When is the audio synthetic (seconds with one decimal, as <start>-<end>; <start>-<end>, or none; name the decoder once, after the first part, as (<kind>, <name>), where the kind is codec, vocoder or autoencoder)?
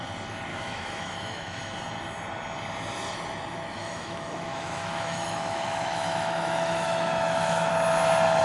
0.5-1.6 (autoencoder, DAC-VAE); 3.8-7.7